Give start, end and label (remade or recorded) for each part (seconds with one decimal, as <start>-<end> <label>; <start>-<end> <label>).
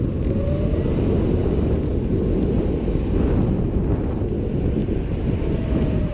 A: 0.0-1.4 recorded; 1.4-2.1 remade; 2.1-4.8 recorded; 4.8-6.1 remade